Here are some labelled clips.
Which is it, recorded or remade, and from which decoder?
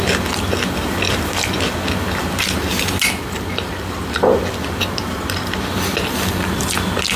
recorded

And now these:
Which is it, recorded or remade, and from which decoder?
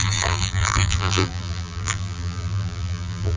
remade, vocoder, BigVGAN v2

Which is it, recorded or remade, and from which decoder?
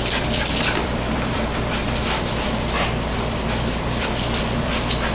remade, vocoder, BigVGAN v2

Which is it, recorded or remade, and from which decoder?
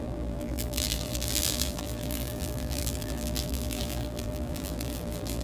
remade, vocoder, BigVGAN v2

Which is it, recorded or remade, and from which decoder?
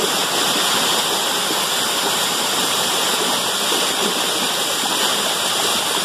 recorded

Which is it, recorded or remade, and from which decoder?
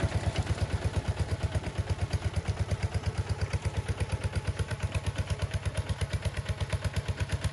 remade, vocoder, BigVGAN v2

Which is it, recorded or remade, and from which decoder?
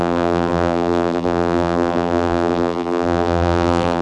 remade, vocoder, BigVGAN v2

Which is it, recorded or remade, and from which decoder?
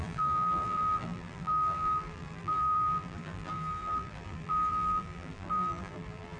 remade, vocoder, BigVGAN v2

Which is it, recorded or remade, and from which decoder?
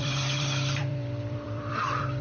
remade, vocoder, BigVGAN v2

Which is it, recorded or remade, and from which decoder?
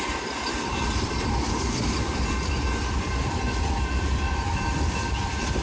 remade, vocoder, BigVGAN v2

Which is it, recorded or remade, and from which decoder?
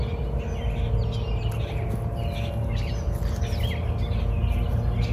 recorded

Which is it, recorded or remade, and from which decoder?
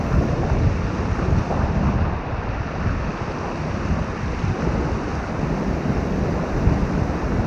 recorded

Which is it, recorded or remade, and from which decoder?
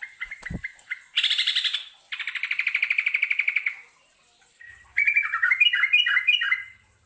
remade, vocoder, BigVGAN v2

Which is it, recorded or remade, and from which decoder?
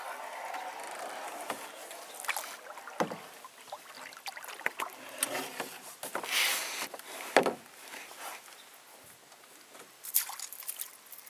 recorded